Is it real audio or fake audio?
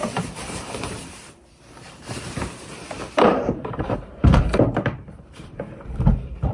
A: fake